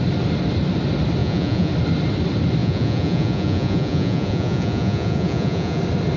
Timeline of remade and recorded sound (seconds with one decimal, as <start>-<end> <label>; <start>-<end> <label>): 0.0-1.2 recorded; 1.2-1.7 remade; 1.7-2.6 recorded; 2.6-5.8 remade; 5.8-6.2 recorded